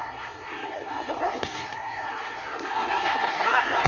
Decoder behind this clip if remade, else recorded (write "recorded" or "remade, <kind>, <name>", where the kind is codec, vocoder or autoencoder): remade, codec, SNAC